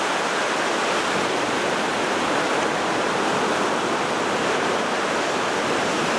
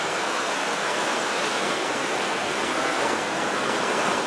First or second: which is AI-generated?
second